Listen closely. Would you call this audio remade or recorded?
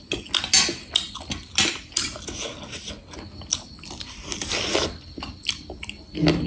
recorded